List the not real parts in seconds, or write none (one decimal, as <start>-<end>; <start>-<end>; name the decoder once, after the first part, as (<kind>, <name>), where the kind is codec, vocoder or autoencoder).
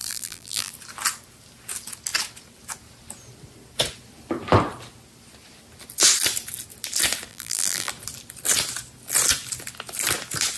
0.0-0.7 (vocoder, BigVGAN v2); 7.3-7.9